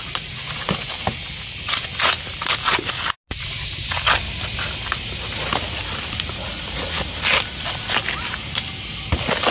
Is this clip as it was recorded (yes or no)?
yes